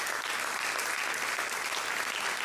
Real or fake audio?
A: real